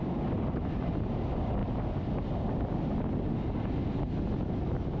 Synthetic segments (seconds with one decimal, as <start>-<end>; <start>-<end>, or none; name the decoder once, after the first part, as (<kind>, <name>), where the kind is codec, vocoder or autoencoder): none